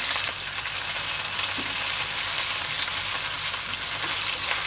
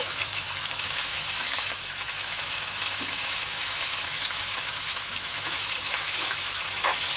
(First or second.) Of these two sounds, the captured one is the first